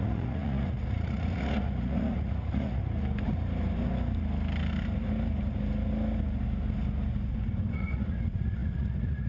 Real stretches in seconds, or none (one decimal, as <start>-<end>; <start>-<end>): 2.8-7.7